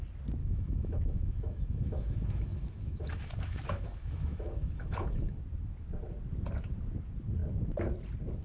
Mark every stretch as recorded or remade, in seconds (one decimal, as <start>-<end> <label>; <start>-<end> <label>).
0.0-0.4 recorded; 0.4-5.4 remade; 5.4-8.4 recorded